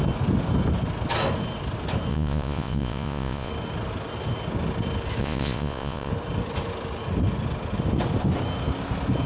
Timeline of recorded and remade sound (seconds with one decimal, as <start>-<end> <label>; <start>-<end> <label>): 0.0-2.1 recorded; 2.1-3.5 remade; 3.5-5.2 recorded; 5.2-6.1 remade; 6.1-9.3 recorded